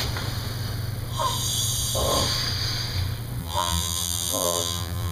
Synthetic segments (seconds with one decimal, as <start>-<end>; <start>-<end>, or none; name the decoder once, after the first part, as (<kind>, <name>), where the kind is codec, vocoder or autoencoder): 3.4-5.1 (vocoder, BigVGAN v2)